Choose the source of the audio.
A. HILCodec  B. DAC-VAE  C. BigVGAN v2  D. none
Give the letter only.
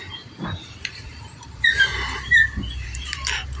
C